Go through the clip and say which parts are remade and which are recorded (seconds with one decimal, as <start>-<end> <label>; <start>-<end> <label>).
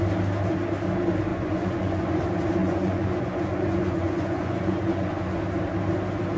0.0-1.3 recorded; 1.3-2.2 remade; 2.2-2.6 recorded; 2.6-5.4 remade; 5.4-6.4 recorded